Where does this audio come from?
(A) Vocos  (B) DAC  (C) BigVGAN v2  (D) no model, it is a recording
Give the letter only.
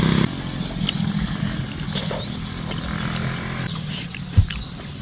D